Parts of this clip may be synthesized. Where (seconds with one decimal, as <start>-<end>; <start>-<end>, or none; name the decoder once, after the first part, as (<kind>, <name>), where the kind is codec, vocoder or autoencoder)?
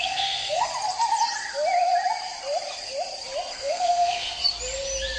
0.0-0.7 (codec, SNAC); 3.5-4.4